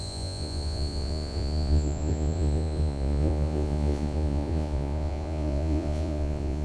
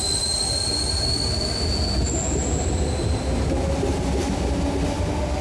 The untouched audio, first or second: second